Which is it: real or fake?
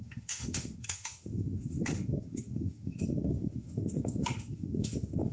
fake